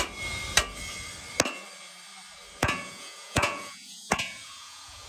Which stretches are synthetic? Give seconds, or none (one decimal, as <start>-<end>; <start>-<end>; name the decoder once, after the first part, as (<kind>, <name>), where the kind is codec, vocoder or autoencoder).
2.6-5.1 (vocoder, Vocos)